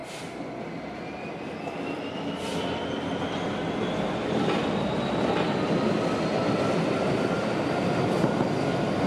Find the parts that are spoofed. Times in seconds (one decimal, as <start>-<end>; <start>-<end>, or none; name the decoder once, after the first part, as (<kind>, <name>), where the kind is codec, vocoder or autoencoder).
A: none